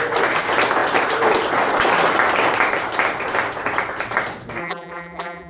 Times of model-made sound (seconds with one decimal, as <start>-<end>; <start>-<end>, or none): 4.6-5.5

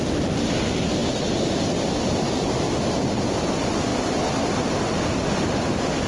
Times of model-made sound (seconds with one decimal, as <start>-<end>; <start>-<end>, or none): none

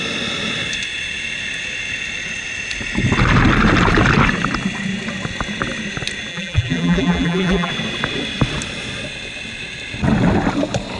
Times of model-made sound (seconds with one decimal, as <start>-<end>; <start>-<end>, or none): 6.3-7.7